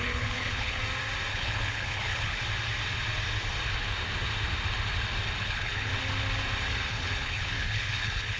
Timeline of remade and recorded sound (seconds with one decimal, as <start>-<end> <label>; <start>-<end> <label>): 0.0-0.8 remade; 0.8-1.3 recorded; 1.3-2.4 remade; 2.4-5.4 recorded; 5.4-5.9 remade; 5.9-6.9 recorded; 6.9-8.4 remade